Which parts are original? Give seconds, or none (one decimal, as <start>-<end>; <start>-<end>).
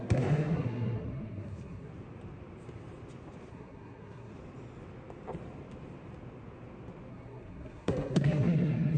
1.9-3.5; 4.3-7.1